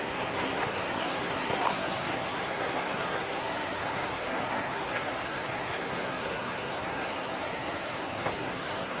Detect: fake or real fake